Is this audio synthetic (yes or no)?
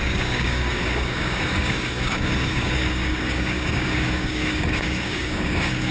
yes